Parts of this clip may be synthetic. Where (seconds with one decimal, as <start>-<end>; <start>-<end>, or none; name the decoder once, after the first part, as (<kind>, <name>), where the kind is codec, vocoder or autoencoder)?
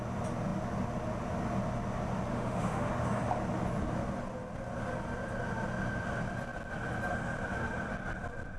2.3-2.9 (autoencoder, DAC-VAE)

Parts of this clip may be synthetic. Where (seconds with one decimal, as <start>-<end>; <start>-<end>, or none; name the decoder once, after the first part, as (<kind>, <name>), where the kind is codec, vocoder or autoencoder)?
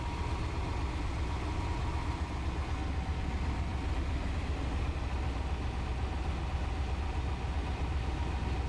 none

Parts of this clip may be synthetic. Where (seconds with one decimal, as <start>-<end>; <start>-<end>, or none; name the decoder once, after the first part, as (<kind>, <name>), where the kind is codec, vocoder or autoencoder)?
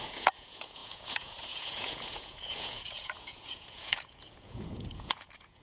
0.0-5.6 (vocoder, Vocos)